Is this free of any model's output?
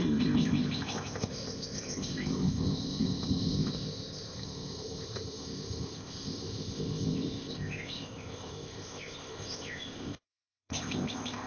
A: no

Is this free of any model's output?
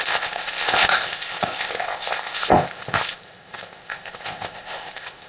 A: no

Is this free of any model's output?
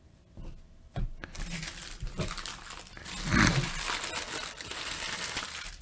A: yes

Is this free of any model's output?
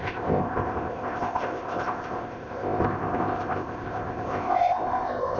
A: no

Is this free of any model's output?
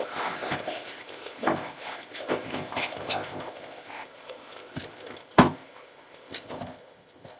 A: no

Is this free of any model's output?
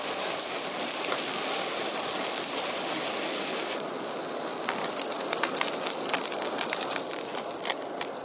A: yes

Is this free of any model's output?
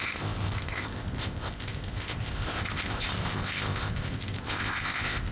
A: no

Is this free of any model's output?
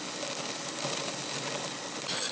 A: yes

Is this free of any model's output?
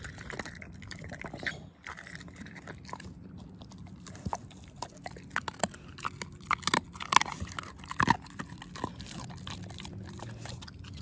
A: yes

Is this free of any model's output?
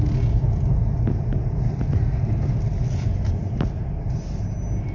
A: yes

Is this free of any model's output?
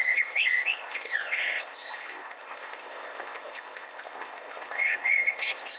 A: no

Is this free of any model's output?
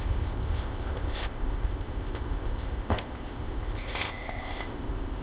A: no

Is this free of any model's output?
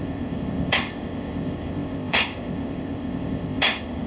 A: no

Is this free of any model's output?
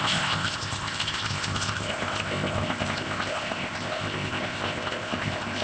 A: no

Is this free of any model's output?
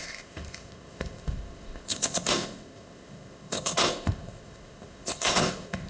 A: no